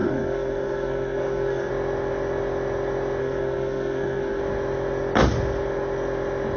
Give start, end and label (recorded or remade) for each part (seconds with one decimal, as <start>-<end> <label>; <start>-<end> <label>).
0.0-1.7 remade; 1.7-3.2 recorded; 3.2-4.4 remade; 4.4-6.6 recorded